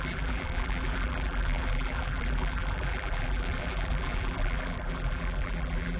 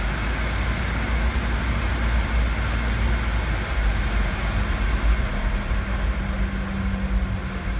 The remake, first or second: first